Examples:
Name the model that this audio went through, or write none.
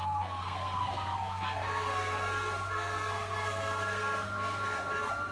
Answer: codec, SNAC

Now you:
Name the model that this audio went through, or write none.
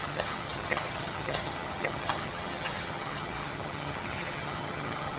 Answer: vocoder, HiFi-GAN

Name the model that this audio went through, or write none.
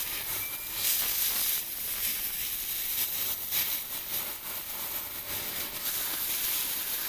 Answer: none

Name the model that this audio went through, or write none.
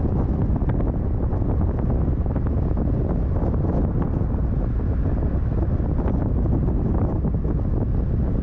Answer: none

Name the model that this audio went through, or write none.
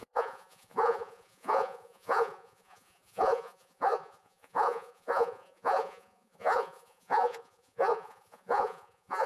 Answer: vocoder, Vocos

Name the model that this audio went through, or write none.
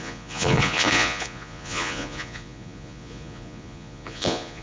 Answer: vocoder, Vocos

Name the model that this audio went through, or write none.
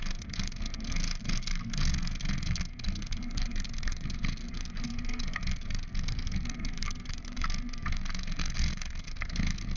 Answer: codec, SNAC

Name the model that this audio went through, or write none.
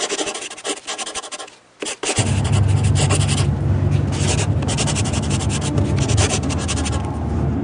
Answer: none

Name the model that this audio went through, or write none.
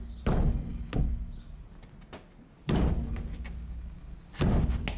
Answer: none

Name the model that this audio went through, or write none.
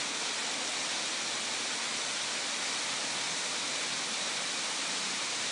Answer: none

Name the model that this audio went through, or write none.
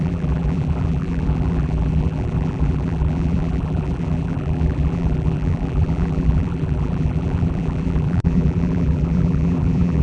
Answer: vocoder, BigVGAN v2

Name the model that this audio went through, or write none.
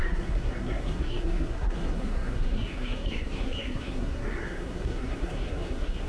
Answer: codec, SNAC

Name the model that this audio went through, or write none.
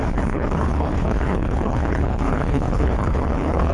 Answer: codec, HILCodec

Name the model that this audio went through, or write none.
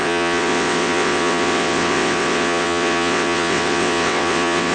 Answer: vocoder, WaveNeXt